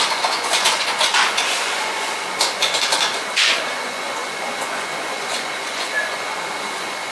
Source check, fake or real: fake